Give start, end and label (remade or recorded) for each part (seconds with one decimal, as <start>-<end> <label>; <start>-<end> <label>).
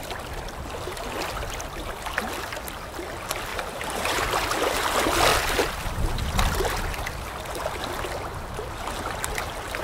0.0-3.5 recorded; 3.5-4.2 remade; 4.2-9.8 recorded